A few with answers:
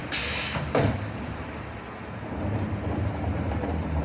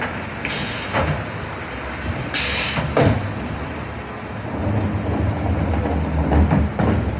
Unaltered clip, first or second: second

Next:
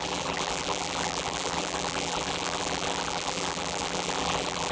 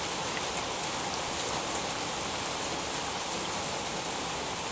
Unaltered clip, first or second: second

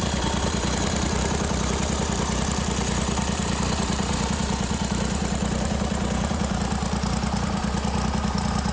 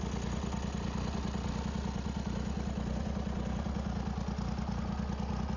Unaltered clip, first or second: second